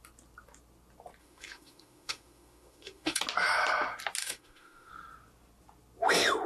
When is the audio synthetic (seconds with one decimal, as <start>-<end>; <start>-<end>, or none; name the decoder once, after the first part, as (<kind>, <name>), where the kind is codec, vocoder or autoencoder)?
1.2-3.2 (autoencoder, DAC-VAE); 4.2-4.9